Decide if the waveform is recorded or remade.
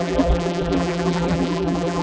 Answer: remade